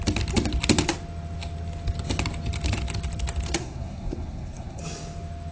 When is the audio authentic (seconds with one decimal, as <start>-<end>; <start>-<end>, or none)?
0.0-3.6; 4.8-5.5